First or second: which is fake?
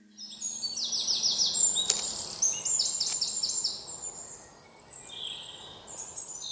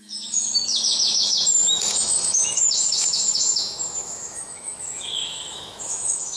second